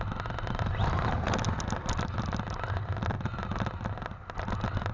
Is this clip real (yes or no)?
yes